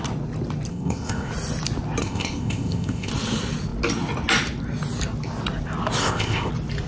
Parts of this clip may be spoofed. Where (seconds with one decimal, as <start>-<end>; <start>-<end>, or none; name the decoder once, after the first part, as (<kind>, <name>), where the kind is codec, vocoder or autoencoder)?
0.7-1.3 (codec, ZipCodec); 2.0-3.1; 6.0-6.5